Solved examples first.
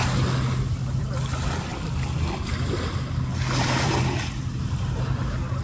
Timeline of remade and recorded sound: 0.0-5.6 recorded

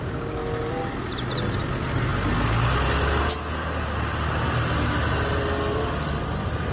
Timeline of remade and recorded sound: 0.0-6.7 recorded

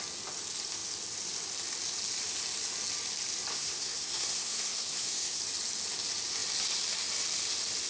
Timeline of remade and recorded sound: 0.0-3.5 recorded; 3.5-5.4 remade; 5.4-7.9 recorded

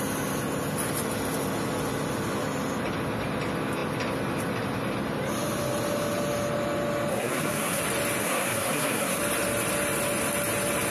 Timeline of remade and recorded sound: 0.0-7.1 recorded; 7.1-7.8 remade; 7.8-8.2 recorded; 8.2-9.2 remade; 9.2-10.9 recorded